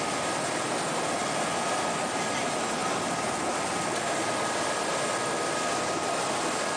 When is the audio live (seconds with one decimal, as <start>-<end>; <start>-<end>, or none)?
0.0-6.8